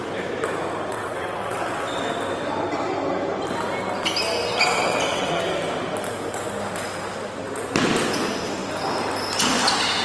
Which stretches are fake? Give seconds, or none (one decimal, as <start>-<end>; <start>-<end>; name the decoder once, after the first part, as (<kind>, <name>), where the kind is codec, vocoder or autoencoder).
0.9-2.1 (vocoder, WaveNeXt); 4.5-5.4